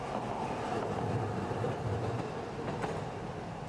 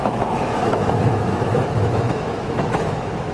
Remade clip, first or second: second